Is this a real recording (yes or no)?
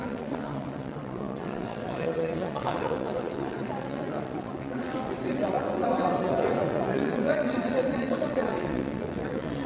no